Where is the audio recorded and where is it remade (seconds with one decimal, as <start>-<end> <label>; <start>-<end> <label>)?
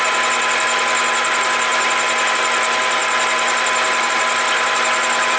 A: 0.0-5.4 recorded